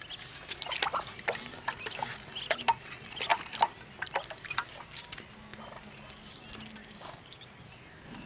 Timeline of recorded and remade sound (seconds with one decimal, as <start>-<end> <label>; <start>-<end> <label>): 0.0-6.8 recorded; 6.8-7.5 remade; 7.5-8.3 recorded